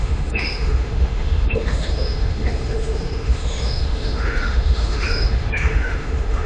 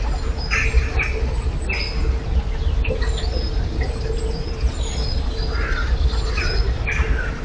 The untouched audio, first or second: second